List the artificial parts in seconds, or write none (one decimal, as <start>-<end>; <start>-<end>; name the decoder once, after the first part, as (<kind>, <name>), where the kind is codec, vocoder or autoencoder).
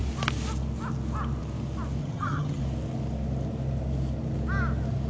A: 2.0-2.6 (vocoder, HiFi-GAN)